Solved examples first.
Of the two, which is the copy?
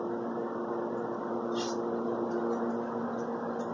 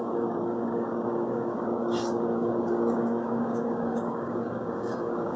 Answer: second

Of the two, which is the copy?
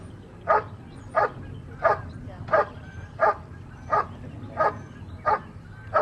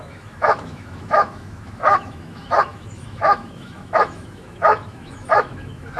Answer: second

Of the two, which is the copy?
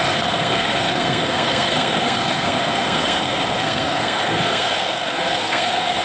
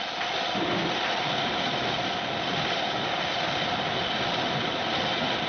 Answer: first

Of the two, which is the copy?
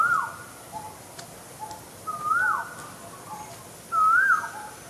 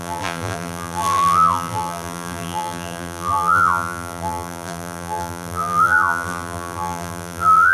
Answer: second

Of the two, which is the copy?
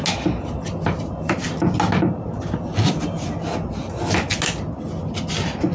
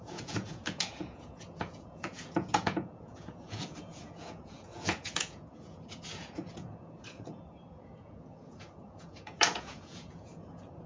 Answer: second